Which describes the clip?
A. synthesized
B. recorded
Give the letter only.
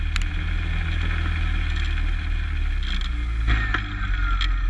B